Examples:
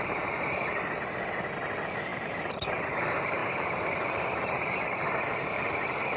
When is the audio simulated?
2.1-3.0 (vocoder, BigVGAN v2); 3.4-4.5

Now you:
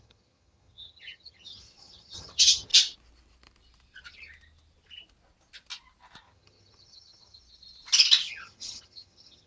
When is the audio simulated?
0.0-2.7 (vocoder, HiFi-GAN); 6.2-7.4; 8.3-9.5

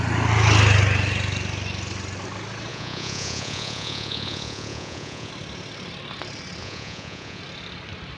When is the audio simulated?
2.7-5.3 (vocoder, Vocos); 6.6-7.4

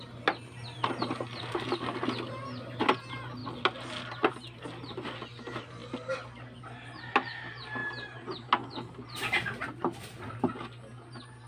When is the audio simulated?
none

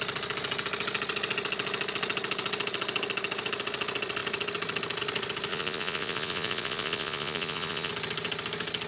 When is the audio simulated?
5.5-7.9 (vocoder, Vocos)

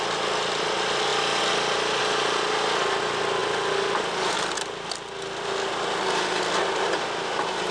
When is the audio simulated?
none

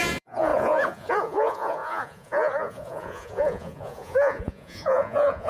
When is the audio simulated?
0.0-5.5 (vocoder, Vocos)

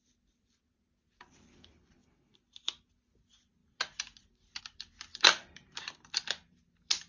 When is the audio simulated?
0.0-2.0 (vocoder, BigVGAN v2); 2.9-3.6; 4.6-7.1